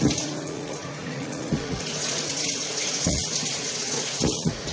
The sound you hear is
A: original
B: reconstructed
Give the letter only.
B